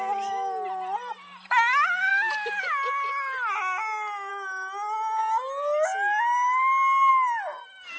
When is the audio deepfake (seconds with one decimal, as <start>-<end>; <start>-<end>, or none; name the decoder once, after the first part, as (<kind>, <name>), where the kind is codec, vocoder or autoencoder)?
none

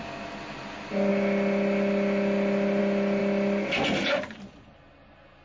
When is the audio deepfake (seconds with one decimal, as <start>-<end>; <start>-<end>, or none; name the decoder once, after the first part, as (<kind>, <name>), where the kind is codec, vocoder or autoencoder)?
none

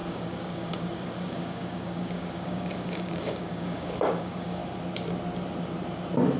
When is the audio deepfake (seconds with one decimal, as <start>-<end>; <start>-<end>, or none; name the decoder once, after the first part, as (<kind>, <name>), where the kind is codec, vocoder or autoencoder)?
0.0-4.6 (codec, DAC)

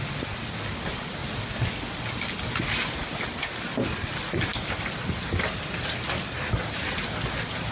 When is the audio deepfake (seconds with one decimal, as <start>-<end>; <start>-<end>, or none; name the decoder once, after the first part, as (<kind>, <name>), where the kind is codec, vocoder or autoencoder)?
none

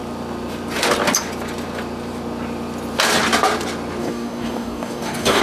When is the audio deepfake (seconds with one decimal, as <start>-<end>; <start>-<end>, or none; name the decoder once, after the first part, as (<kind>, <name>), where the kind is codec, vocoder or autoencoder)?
4.0-5.4 (codec, DAC)

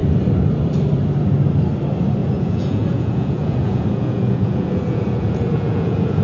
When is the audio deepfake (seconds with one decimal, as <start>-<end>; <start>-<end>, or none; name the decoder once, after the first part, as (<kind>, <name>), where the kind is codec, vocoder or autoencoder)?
2.2-6.2 (vocoder, Vocos)